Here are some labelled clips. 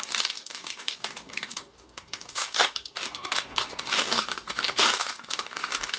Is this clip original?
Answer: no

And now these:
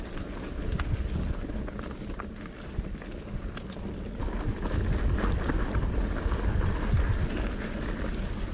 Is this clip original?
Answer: yes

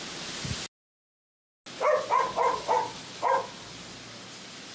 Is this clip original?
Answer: yes